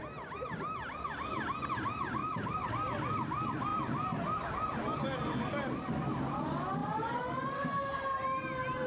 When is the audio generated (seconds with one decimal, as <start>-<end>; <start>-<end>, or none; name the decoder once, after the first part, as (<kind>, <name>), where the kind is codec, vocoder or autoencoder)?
2.2-2.7 (vocoder, BigVGAN v2); 6.8-8.9